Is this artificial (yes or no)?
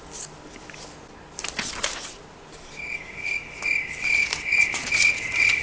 no